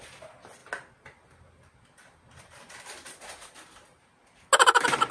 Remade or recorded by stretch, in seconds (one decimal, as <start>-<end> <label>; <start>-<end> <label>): 0.0-5.1 recorded